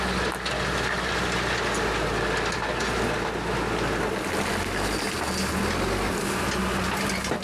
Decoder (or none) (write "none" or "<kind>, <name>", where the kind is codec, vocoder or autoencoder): none